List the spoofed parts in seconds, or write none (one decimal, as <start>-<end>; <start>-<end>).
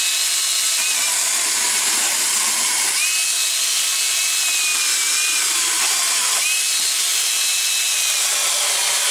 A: none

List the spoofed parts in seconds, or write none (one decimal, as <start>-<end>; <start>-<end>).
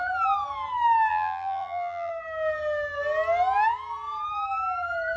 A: 1.1-2.1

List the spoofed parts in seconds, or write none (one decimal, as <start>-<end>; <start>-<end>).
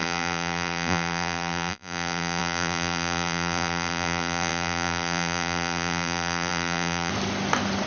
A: 0.0-7.1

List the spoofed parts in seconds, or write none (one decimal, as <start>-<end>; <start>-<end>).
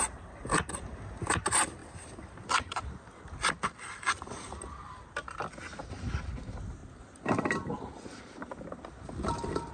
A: 1.8-5.3; 6.8-7.4; 8.4-8.9